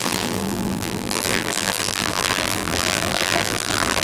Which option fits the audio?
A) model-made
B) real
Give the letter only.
A